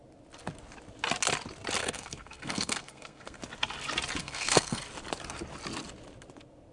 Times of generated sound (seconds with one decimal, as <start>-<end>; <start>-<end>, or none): 1.8-3.4; 4.2-4.8